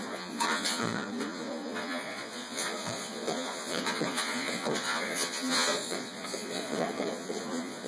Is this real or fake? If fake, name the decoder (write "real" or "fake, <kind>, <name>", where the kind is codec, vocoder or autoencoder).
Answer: fake, vocoder, Vocos